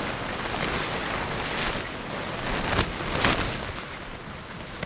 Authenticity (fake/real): real